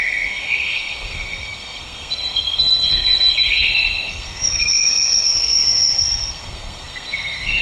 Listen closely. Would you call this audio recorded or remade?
remade